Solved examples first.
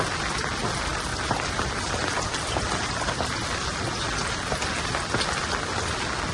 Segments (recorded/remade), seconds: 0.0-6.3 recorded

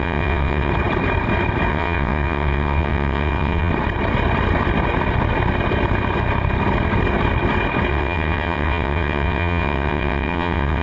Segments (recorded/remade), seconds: 0.0-0.7 remade; 0.7-1.7 recorded; 1.7-3.7 remade; 3.7-7.9 recorded; 7.9-10.8 remade